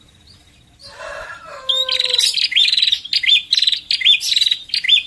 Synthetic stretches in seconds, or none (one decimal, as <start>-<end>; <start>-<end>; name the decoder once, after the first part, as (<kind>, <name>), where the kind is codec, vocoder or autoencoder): 0.8-1.4 (vocoder, BigVGAN v2)